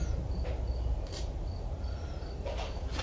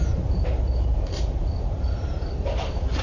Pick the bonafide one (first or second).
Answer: first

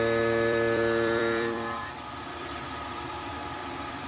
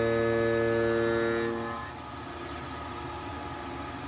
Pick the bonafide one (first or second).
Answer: second